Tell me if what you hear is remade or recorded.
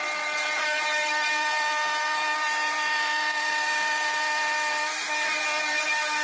remade